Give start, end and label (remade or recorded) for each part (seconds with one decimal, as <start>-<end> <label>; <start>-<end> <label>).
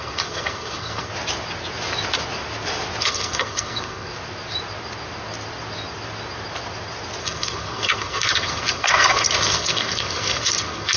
0.0-1.1 remade; 1.1-3.0 recorded; 3.0-4.1 remade; 4.1-7.2 recorded; 7.2-11.0 remade